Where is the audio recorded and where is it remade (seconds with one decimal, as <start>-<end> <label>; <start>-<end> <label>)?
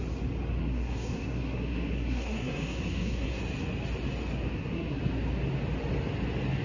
0.0-0.6 recorded; 0.6-3.4 remade; 3.4-4.5 recorded; 4.5-5.0 remade; 5.0-6.6 recorded